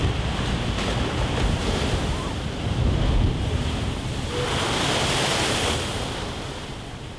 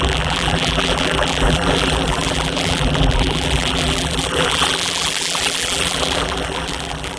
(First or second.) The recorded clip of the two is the first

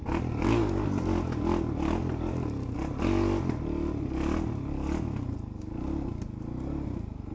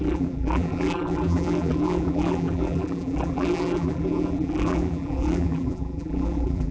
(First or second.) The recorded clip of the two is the first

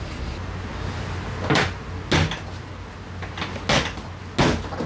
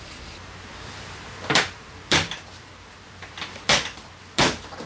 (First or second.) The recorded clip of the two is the first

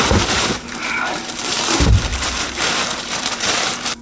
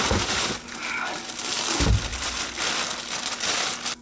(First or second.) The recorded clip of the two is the second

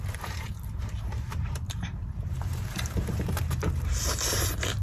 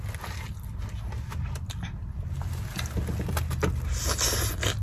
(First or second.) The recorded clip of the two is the second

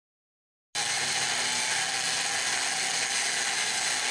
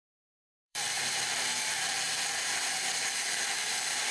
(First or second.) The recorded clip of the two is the first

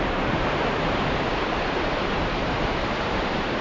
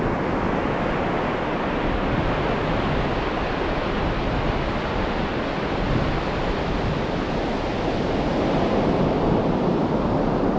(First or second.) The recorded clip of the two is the second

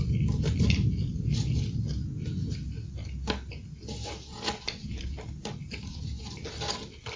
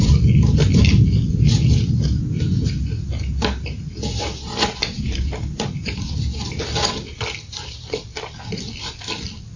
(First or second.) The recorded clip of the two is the first